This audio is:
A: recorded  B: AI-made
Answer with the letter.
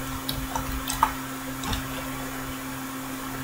A